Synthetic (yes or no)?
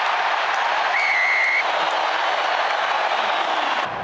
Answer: no